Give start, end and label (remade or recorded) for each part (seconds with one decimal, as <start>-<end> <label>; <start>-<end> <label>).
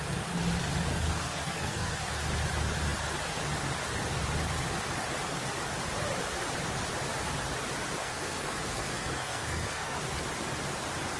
0.0-0.9 recorded; 0.9-2.0 remade; 2.0-8.0 recorded; 8.0-10.0 remade; 10.0-11.2 recorded